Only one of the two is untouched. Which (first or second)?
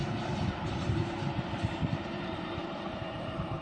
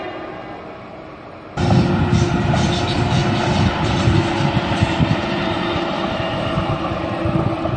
second